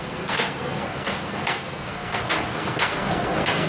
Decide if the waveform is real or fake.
fake